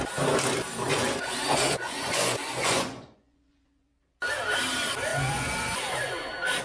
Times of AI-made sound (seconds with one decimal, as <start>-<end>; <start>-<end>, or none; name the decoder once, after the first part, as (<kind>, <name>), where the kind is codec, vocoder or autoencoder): 0.9-3.9 (vocoder, Vocos); 5.1-6.1